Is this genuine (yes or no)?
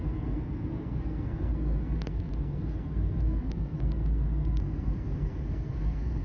no